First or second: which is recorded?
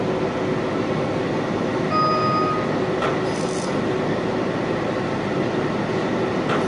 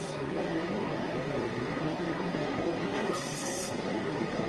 first